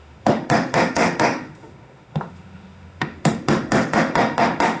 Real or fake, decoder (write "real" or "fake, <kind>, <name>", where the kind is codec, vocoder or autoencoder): fake, autoencoder, DAC-VAE